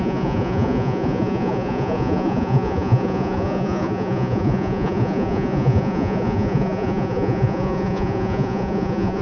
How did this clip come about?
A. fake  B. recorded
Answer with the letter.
A